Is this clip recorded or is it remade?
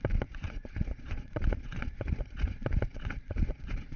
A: remade